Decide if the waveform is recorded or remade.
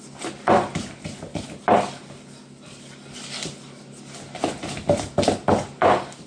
recorded